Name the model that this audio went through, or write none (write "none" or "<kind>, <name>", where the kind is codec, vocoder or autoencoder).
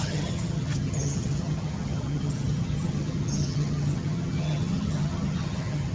vocoder, HiFi-GAN